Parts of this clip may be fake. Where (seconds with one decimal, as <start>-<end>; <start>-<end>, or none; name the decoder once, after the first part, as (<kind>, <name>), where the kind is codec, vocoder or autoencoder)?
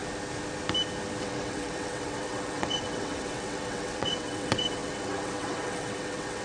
1.2-6.4 (vocoder, WaveNeXt)